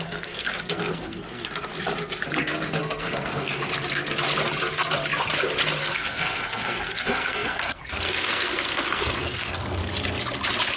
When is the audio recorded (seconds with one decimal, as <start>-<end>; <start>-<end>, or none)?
1.7-2.8; 3.7-5.8; 9.8-10.8